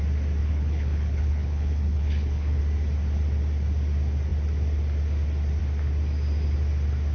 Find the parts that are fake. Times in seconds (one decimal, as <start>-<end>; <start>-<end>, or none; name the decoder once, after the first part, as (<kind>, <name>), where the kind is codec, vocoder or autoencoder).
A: 0.4-2.6 (codec, HILCodec)